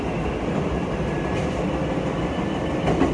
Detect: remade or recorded recorded